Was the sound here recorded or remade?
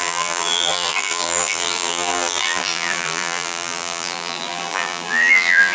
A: remade